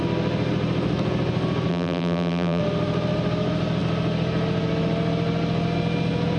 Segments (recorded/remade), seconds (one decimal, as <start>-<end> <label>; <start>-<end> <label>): 0.0-1.7 recorded; 1.7-2.6 remade; 2.6-6.4 recorded